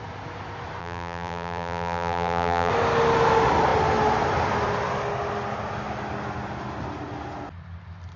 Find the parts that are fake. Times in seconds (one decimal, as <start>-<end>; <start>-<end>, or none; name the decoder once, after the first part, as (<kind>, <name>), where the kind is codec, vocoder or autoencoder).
0.8-2.7 (vocoder, BigVGAN v2)